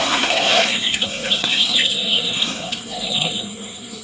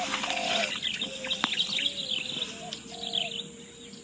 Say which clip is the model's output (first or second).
first